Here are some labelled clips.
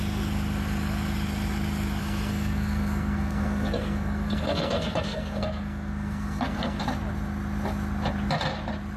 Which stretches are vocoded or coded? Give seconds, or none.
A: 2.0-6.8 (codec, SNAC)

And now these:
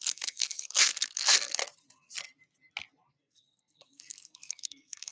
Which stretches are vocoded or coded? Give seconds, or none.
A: 0.0-1.6 (codec, SNAC); 3.1-5.1

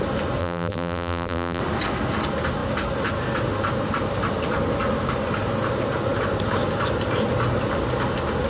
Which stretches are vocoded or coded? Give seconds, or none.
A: 0.4-1.6 (vocoder, BigVGAN v2)